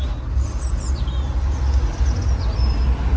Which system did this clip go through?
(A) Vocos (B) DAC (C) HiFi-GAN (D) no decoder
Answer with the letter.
D